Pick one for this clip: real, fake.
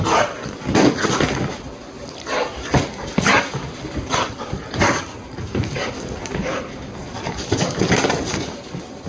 real